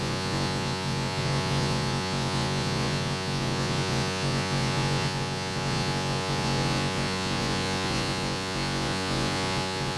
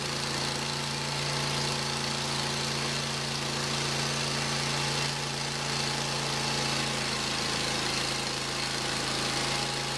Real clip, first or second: second